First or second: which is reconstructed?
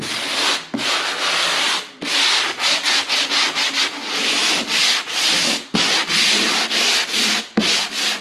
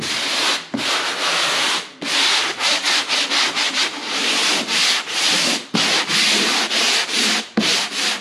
second